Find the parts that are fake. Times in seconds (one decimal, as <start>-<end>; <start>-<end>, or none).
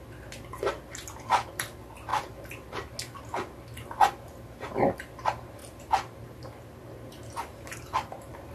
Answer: none